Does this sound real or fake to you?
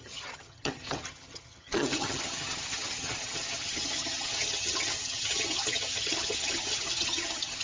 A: fake